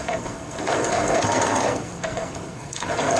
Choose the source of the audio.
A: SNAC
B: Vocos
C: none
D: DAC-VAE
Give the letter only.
A